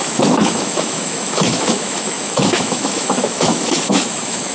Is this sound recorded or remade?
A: remade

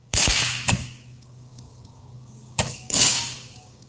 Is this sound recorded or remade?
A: remade